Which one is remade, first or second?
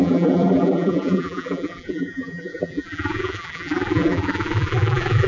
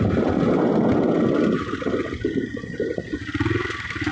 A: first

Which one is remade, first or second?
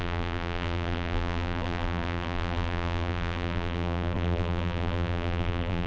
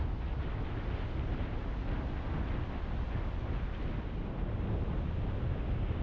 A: first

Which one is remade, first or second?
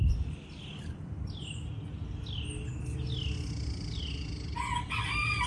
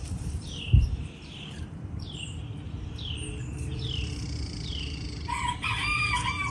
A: second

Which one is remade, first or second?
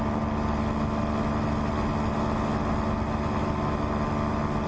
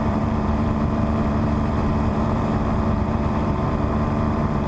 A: second